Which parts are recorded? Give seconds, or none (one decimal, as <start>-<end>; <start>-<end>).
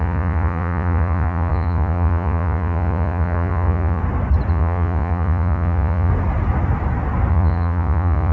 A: 4.0-4.5; 6.1-7.3